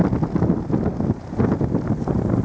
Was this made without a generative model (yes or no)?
yes